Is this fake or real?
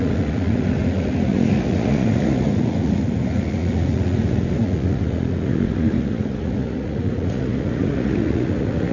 fake